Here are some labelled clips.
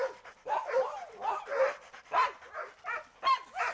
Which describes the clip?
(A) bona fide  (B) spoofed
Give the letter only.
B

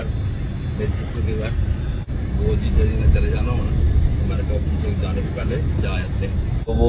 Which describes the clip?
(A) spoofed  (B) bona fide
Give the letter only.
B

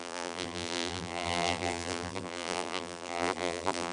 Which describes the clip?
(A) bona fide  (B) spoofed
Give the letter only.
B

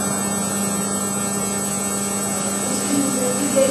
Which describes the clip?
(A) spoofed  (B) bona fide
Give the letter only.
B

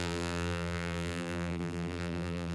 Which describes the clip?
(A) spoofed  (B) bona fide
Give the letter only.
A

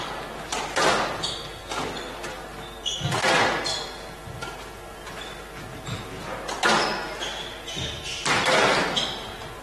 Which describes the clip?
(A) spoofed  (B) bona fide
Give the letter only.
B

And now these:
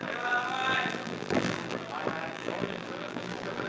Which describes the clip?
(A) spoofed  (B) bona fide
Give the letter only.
A